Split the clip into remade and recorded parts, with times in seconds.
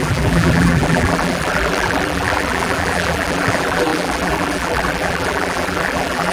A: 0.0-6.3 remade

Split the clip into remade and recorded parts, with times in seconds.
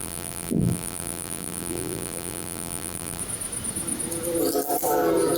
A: 0.0-3.2 remade; 3.2-5.4 recorded